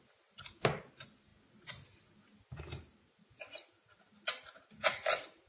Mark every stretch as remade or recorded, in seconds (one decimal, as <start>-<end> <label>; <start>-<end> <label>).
0.0-5.5 recorded

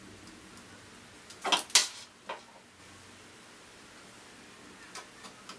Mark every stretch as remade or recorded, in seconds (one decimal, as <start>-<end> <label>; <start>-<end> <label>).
0.0-5.6 recorded

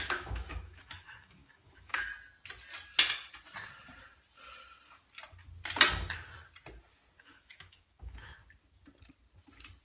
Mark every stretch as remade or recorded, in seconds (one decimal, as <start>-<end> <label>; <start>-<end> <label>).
0.0-2.1 remade; 2.1-7.2 recorded; 7.2-8.4 remade; 8.4-9.8 recorded

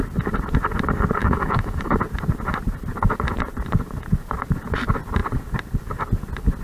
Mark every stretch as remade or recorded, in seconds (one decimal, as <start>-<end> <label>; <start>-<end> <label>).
0.0-1.2 recorded; 1.2-2.0 remade; 2.0-6.6 recorded

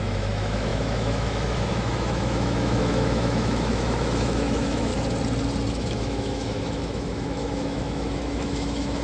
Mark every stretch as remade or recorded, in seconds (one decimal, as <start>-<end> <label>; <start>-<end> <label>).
0.0-4.9 remade; 4.9-5.7 recorded; 5.7-9.0 remade

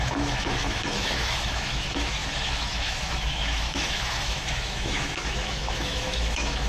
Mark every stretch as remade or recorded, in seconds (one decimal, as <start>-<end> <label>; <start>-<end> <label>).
0.0-6.7 remade

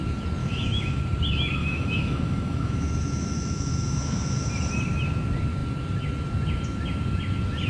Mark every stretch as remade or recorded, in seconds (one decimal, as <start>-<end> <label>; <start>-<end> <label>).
0.0-0.4 recorded; 0.4-1.0 remade; 1.0-1.6 recorded; 1.6-4.5 remade; 4.5-7.7 recorded